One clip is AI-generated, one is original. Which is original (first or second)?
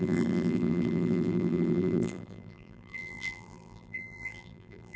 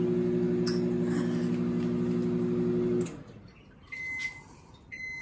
second